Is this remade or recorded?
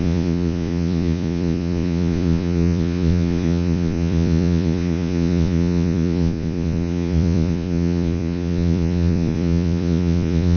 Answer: remade